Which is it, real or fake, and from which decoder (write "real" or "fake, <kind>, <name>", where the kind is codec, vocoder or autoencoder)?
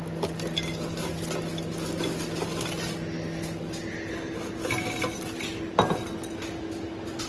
real